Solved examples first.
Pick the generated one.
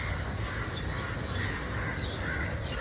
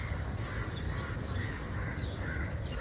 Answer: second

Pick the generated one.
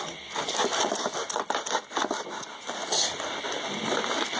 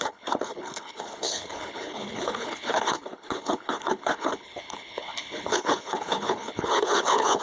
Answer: second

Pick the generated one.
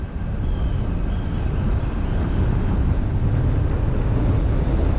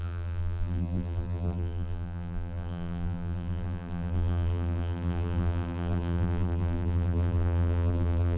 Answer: second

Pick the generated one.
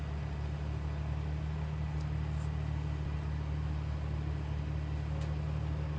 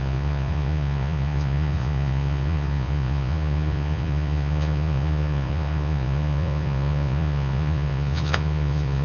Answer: second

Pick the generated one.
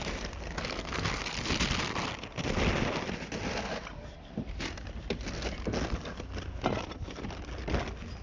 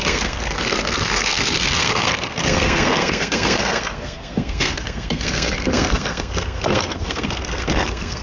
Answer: second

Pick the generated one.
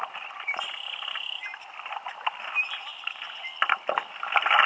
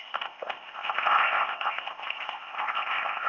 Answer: second